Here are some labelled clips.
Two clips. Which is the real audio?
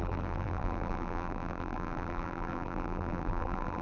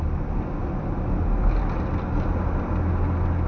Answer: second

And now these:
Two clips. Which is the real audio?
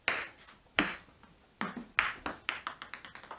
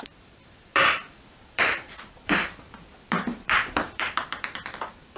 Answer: first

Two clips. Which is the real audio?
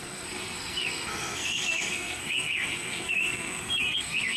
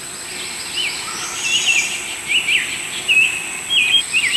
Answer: second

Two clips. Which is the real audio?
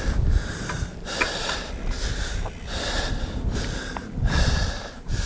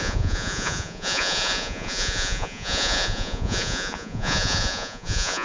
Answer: first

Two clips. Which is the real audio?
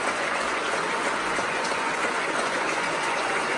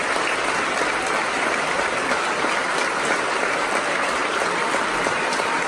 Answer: second